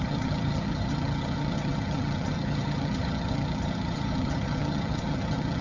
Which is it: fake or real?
fake